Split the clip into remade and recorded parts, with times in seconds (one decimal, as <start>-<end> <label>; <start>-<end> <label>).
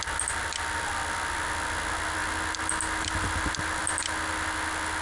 0.0-5.0 recorded